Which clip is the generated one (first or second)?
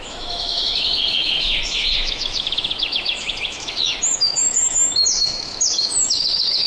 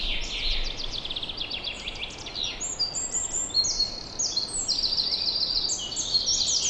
first